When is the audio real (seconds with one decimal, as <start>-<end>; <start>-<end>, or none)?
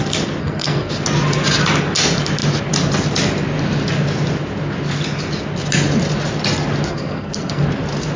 0.0-0.4; 0.9-6.9; 7.6-8.2